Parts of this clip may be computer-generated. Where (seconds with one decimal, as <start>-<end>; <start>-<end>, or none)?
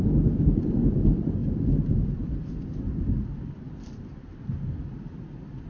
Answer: 0.0-5.7